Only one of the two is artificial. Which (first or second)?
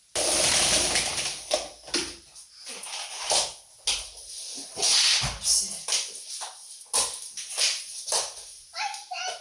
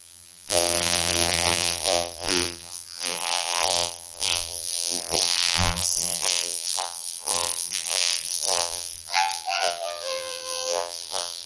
second